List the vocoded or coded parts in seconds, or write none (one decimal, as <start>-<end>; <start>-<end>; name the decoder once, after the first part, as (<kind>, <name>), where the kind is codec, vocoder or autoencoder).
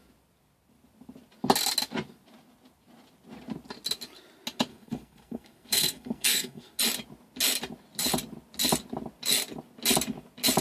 4.7-6.8 (codec, SNAC)